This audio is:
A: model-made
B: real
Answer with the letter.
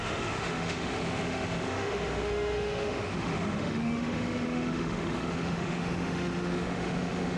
A